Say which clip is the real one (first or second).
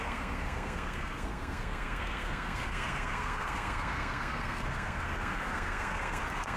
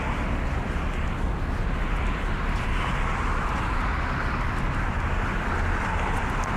second